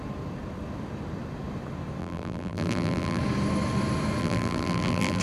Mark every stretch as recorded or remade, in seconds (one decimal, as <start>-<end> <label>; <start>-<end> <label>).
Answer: 0.0-2.0 recorded; 2.0-3.2 remade; 3.2-4.2 recorded; 4.2-5.2 remade